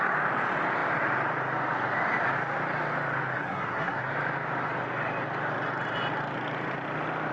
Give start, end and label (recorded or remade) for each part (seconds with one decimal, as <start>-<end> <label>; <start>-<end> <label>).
0.0-3.3 recorded; 3.3-4.1 remade; 4.1-7.3 recorded